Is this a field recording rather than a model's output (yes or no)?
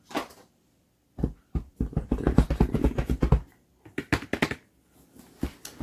yes